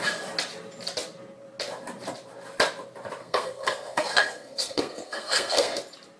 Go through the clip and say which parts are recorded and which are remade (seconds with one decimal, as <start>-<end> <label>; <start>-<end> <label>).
0.0-3.2 recorded; 3.2-5.8 remade; 5.8-6.2 recorded